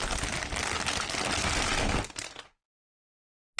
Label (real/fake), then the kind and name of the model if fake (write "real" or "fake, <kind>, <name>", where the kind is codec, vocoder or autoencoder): real